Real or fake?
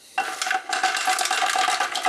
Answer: real